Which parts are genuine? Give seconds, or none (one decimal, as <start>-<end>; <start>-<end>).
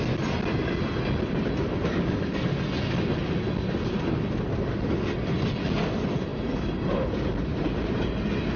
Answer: 0.0-6.3; 7.1-7.5; 8.1-8.6